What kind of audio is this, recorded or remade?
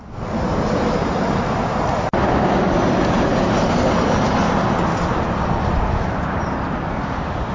recorded